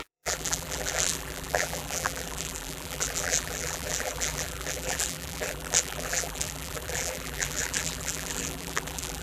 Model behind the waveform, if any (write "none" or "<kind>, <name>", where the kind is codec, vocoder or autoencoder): vocoder, BigVGAN v2